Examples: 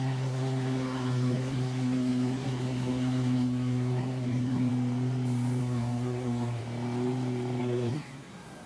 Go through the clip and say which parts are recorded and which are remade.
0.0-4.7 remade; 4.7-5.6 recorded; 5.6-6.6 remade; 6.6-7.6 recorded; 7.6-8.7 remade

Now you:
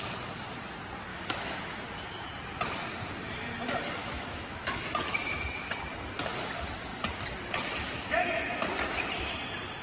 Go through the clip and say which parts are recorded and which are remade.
0.0-1.1 recorded; 1.1-2.1 remade; 2.1-4.0 recorded; 4.0-4.8 remade; 4.8-9.8 recorded